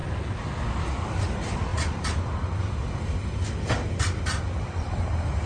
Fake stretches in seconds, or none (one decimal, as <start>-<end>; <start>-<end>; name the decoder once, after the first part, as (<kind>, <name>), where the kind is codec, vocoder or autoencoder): 1.7-5.0 (vocoder, BigVGAN v2)